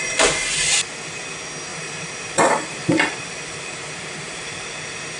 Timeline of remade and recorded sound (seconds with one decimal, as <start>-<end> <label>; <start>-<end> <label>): 0.0-1.7 recorded; 1.7-4.8 remade; 4.8-5.2 recorded

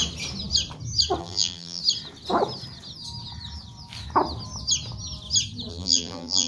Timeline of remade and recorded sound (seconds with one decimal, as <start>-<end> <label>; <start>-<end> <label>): 0.0-1.2 recorded; 1.2-1.8 remade; 1.8-5.7 recorded; 5.7-6.5 remade

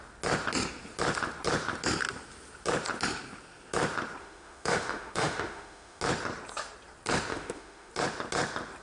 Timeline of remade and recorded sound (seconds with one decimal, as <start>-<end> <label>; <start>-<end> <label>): 0.0-4.2 recorded; 4.2-6.0 remade; 6.0-7.3 recorded; 7.3-7.9 remade; 7.9-8.8 recorded

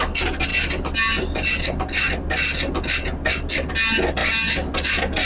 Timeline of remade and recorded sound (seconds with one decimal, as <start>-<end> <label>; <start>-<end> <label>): 0.0-5.3 recorded

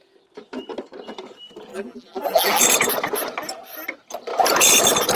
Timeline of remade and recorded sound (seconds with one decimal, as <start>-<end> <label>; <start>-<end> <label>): 0.0-1.7 recorded; 1.7-2.6 remade; 2.6-5.2 recorded

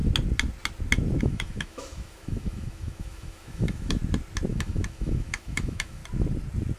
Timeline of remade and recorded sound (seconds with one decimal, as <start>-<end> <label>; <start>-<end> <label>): 0.0-1.2 recorded; 1.2-4.0 remade; 4.0-4.5 recorded; 4.5-6.0 remade; 6.0-6.8 recorded

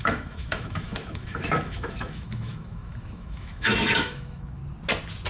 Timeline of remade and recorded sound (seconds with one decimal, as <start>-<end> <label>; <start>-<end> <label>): 0.0-4.6 remade; 4.6-5.3 recorded

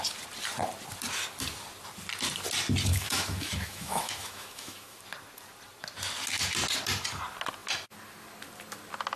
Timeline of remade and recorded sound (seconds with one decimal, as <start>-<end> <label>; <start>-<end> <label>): 0.0-2.9 recorded; 2.9-5.0 remade; 5.0-9.2 recorded